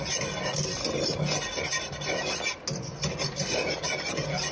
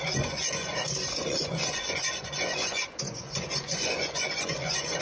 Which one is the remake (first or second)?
second